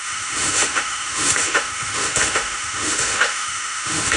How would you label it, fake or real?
fake